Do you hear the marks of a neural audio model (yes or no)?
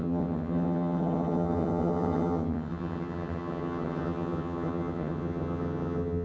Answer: yes